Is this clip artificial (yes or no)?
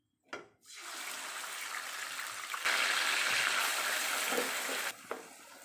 no